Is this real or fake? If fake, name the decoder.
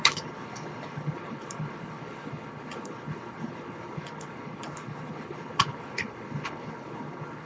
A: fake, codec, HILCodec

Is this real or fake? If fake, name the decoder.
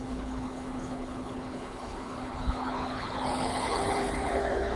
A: fake, codec, HILCodec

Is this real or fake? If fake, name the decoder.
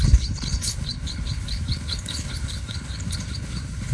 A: fake, codec, HILCodec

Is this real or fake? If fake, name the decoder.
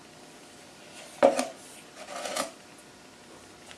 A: real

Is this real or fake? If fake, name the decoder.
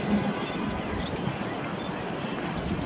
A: real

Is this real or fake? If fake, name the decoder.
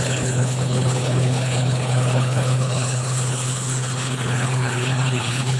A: fake, codec, HILCodec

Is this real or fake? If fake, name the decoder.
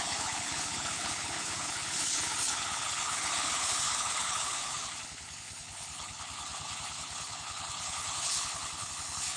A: fake, codec, HILCodec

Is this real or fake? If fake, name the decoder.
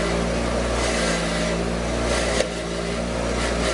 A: real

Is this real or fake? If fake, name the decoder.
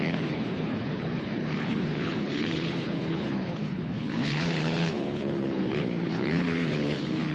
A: fake, codec, HILCodec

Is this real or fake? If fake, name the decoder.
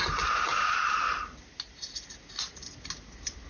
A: real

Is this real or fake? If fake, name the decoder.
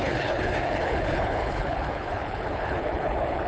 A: fake, codec, HILCodec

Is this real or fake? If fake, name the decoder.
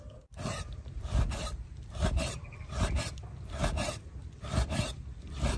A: real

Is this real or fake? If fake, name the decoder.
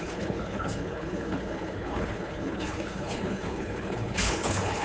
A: fake, codec, HILCodec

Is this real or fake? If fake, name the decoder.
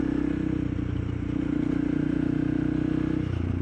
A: real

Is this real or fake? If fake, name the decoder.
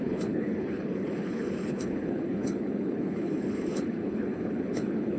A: fake, codec, HILCodec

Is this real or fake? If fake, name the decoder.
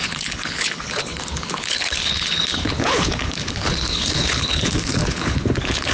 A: fake, codec, HILCodec